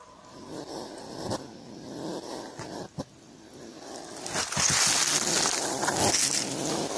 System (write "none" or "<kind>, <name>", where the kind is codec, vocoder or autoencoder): none